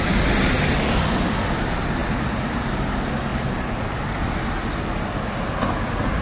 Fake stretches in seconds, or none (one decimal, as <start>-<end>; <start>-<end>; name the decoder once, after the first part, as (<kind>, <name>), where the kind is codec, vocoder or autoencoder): none